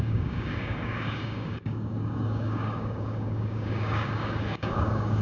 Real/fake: fake